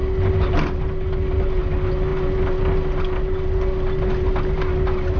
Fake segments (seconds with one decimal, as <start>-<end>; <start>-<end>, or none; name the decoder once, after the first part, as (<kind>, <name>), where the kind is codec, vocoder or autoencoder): none